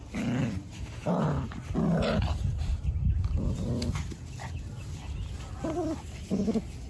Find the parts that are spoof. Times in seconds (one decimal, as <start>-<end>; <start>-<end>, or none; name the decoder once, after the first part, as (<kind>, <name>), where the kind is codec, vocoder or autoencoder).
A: 0.4-1.2 (vocoder, BigVGAN v2); 1.9-3.7